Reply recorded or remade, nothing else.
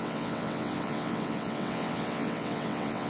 remade